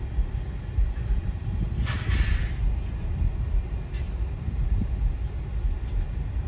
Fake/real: real